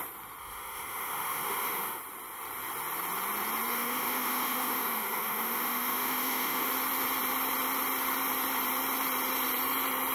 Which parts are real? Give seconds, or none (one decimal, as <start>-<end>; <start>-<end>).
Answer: 0.0-0.4; 2.0-3.7; 6.7-10.1

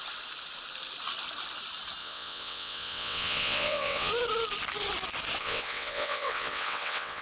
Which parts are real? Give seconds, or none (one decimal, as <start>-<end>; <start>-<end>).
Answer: 0.0-2.0; 4.1-5.4

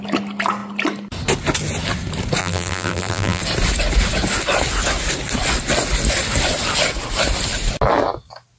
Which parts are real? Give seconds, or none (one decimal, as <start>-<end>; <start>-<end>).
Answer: 0.0-2.4; 3.4-8.6

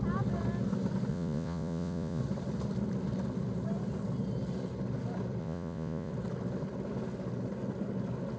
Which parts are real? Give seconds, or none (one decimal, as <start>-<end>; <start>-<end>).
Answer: 0.0-1.1; 2.2-5.4; 6.1-8.4

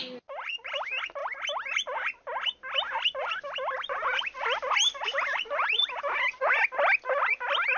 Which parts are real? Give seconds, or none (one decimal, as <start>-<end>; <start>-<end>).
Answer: 0.0-7.8

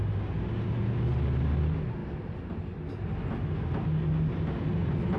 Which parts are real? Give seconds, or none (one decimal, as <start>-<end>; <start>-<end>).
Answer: 0.0-5.2

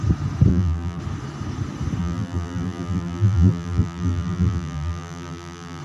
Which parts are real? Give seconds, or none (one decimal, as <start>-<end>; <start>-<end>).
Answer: 0.0-0.5; 1.0-2.0